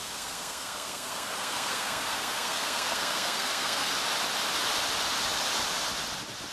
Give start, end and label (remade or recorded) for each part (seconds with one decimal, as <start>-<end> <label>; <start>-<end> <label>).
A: 0.0-3.9 remade; 3.9-6.5 recorded